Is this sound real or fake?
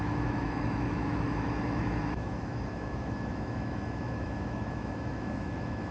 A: fake